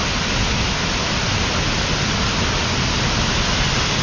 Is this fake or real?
real